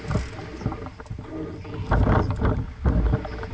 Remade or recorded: recorded